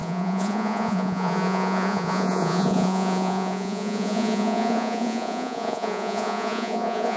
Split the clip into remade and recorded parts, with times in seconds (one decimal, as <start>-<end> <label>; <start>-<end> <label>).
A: 0.0-7.2 remade